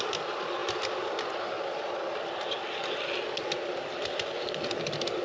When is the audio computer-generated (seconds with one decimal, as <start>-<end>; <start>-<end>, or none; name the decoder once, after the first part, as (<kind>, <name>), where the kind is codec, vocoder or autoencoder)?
0.6-3.0 (vocoder, BigVGAN v2)